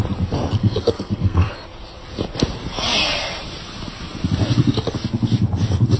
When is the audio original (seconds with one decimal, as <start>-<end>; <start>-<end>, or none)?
0.0-0.6; 1.5-6.0

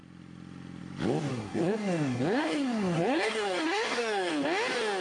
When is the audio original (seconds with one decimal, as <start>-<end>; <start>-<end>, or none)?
0.0-1.3; 4.3-5.0

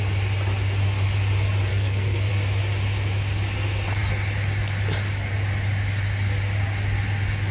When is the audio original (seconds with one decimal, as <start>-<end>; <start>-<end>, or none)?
0.0-1.7; 2.3-7.5

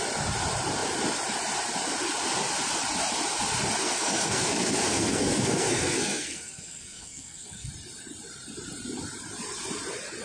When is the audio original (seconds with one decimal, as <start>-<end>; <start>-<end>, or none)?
0.0-3.8; 7.7-10.2

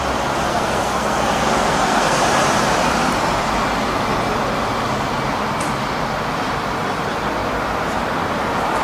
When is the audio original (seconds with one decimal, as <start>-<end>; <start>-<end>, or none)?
0.0-0.5; 2.2-8.8

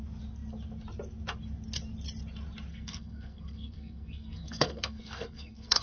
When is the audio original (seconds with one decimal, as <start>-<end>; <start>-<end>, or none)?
0.0-2.7

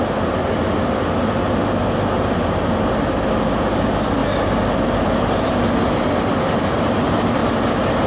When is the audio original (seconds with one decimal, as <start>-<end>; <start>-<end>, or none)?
0.0-8.1